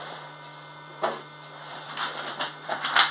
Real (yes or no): no